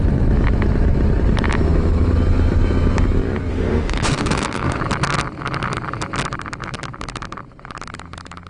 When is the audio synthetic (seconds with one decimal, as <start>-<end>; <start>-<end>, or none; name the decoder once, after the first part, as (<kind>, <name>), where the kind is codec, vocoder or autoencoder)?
3.5-4.8 (autoencoder, DAC-VAE)